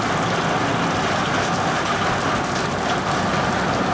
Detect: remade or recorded recorded